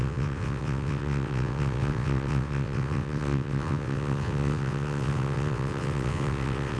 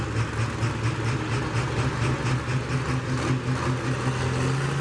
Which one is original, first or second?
second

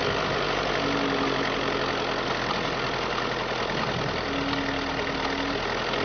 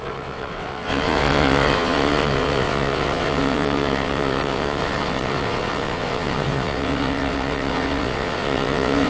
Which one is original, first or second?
first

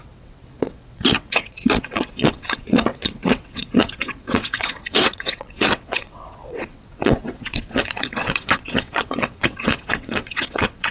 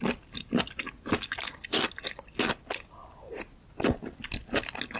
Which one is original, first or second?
second